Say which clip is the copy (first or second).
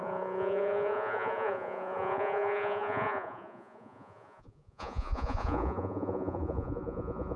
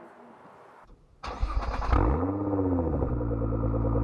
first